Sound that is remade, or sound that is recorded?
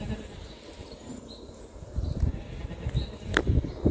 recorded